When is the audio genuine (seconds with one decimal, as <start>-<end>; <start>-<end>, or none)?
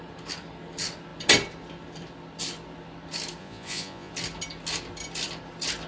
0.0-3.4; 4.1-5.9